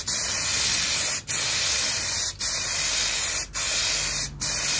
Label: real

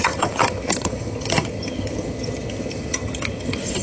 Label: fake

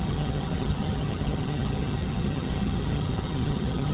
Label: fake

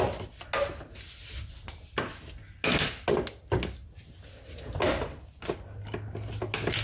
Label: real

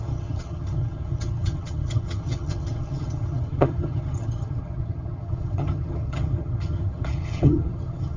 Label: fake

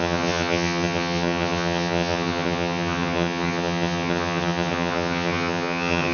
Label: fake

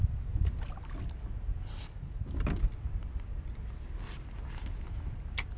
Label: real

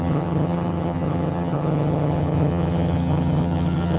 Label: fake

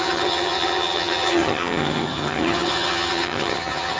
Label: fake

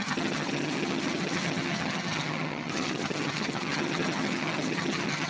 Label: fake